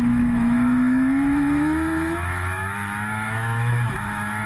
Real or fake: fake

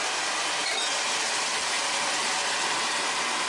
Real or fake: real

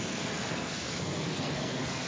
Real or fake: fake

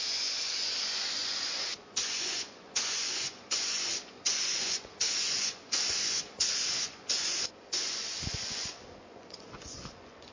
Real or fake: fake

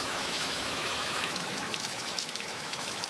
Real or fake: fake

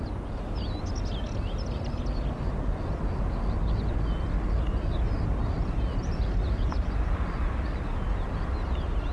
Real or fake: real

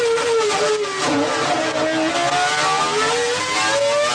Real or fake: real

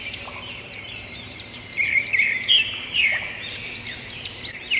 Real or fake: fake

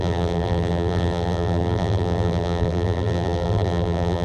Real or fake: fake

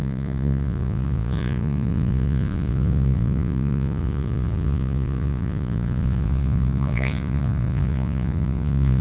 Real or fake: fake